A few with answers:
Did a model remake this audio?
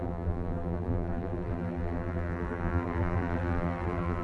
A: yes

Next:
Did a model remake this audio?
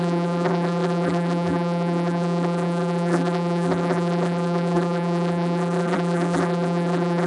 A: yes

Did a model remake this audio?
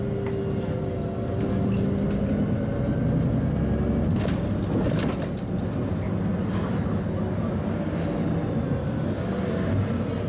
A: no